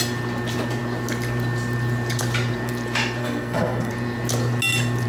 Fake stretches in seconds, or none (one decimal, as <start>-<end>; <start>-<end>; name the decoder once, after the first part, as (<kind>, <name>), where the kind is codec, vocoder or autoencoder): 3.2-3.9 (codec, SNAC)